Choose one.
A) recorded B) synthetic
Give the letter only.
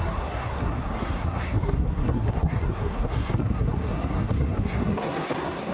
B